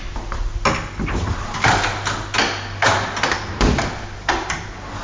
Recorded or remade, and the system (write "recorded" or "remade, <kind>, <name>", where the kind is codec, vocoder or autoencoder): recorded